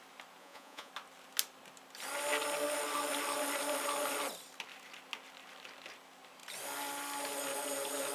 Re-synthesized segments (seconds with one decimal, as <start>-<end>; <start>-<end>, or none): 0.4-0.9